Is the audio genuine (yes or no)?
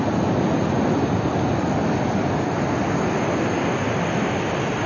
yes